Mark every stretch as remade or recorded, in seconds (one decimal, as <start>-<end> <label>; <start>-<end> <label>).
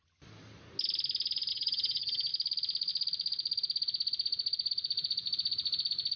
0.0-1.5 recorded; 1.5-2.3 remade; 2.3-6.2 recorded